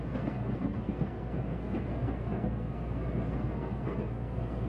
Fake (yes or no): yes